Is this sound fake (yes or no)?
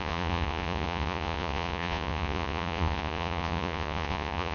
yes